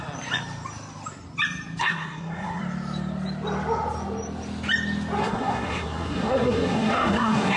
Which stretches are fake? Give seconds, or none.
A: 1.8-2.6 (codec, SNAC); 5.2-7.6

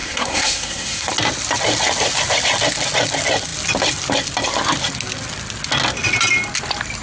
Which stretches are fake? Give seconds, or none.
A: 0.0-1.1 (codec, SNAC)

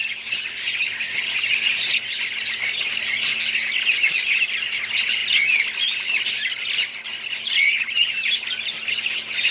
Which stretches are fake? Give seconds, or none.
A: none

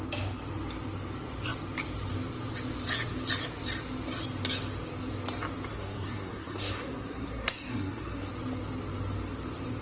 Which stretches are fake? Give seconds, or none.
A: 5.7-8.3 (codec, SNAC)

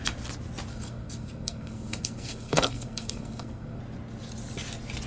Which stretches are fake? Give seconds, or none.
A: 0.7-3.8 (codec, SNAC)

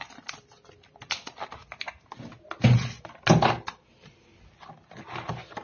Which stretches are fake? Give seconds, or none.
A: none

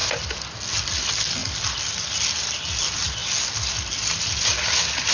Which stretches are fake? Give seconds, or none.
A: 0.8-1.4 (vocoder, BigVGAN v2); 2.4-3.2

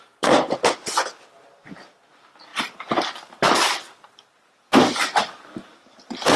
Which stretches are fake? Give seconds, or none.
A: none